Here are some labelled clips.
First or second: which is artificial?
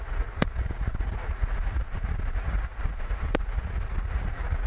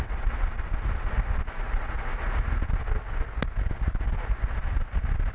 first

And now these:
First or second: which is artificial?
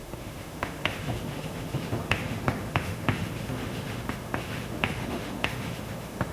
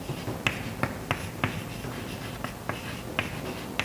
first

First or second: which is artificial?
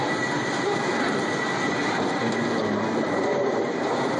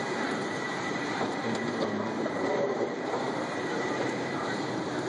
second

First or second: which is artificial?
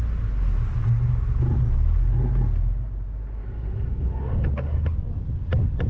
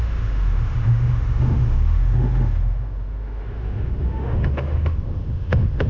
second